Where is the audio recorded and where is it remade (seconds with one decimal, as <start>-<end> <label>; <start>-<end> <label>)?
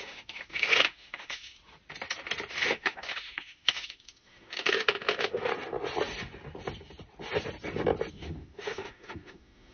0.0-1.6 remade; 1.6-2.5 recorded; 2.5-5.5 remade; 5.5-8.1 recorded; 8.1-9.7 remade